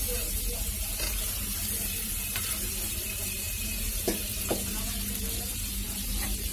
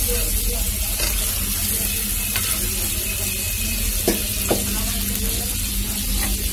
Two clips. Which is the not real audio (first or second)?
first